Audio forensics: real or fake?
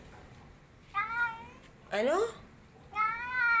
real